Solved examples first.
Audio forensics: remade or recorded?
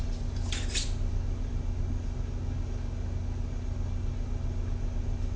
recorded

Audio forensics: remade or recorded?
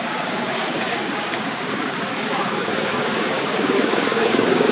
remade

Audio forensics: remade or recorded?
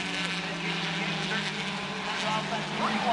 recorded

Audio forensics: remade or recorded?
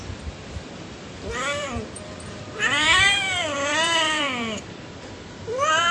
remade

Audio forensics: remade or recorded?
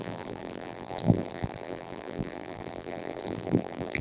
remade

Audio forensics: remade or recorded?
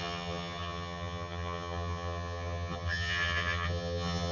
remade